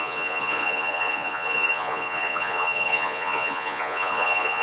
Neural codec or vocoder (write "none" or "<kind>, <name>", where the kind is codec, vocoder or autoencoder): vocoder, Vocos